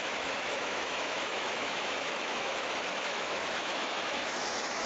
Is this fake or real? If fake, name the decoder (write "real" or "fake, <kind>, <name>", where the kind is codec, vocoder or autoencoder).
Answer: fake, autoencoder, DAC-VAE